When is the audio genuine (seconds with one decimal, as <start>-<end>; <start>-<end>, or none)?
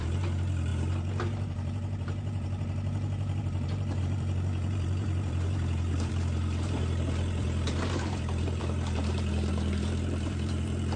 none